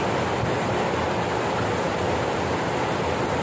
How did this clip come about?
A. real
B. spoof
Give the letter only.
A